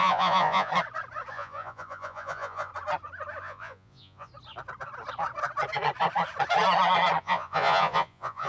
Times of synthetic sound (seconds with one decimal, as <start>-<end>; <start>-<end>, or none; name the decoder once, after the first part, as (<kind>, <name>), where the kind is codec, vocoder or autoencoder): 0.0-0.7 (vocoder, Vocos); 1.3-2.7; 3.4-4.3; 7.2-8.5

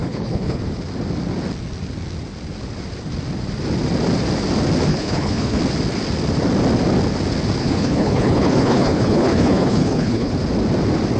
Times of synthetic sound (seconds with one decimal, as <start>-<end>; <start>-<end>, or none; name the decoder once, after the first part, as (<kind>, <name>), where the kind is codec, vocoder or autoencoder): 0.0-0.6 (codec, HILCodec); 4.9-5.6; 7.6-10.3

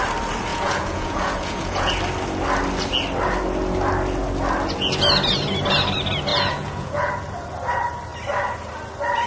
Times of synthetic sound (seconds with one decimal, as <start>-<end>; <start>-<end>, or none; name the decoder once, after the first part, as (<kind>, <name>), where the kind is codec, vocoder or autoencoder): 0.5-1.9 (vocoder, Vocos); 6.3-7.1

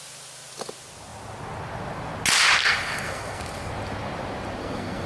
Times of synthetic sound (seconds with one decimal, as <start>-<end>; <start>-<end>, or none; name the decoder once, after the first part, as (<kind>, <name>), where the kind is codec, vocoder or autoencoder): 2.6-3.7 (codec, SNAC); 4.6-5.1